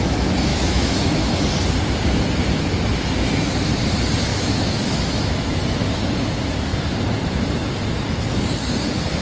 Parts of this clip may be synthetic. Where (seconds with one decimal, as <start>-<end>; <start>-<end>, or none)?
0.5-1.3; 4.3-5.9

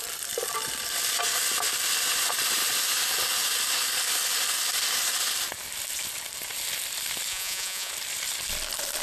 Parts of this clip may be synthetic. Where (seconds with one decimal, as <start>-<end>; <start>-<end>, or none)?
7.3-7.9